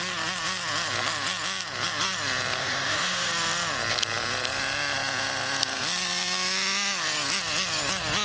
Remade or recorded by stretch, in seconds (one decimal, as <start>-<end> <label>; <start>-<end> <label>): 0.0-2.6 recorded; 2.6-3.3 remade; 3.3-8.2 recorded

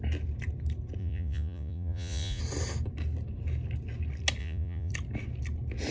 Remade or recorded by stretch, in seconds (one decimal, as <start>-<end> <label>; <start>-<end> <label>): 0.0-1.0 recorded; 1.0-2.4 remade; 2.4-4.4 recorded; 4.4-4.9 remade; 4.9-5.9 recorded